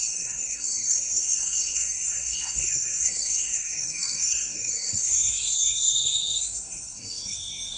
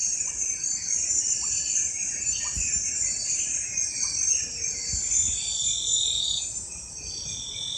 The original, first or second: second